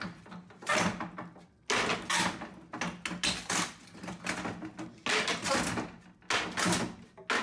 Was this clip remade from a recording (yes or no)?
no